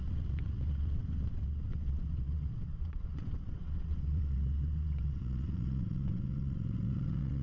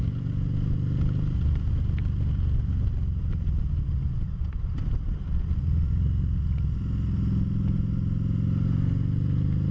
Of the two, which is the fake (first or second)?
first